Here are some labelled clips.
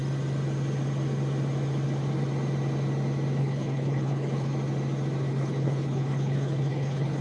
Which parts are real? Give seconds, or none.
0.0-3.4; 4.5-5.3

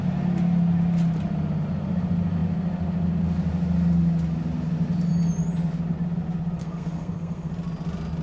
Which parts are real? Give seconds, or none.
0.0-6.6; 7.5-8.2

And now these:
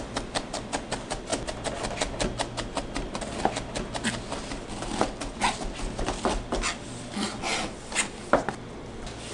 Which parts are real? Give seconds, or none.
0.0-9.3

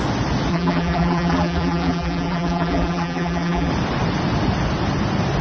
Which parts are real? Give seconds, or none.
0.0-0.5; 3.7-5.4

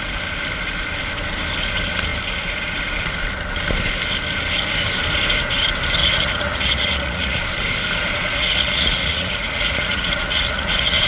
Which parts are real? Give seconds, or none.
0.0-6.0; 7.4-8.3